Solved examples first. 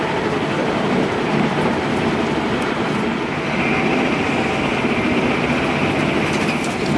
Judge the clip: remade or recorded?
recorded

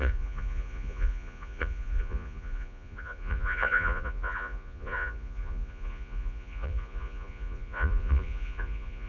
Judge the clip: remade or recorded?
remade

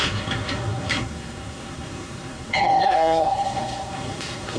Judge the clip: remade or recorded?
remade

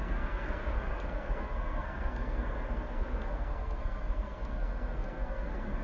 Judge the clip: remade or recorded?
remade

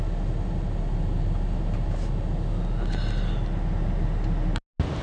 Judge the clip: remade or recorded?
recorded